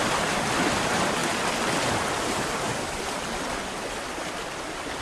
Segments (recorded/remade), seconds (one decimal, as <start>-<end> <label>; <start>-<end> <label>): 0.0-5.0 recorded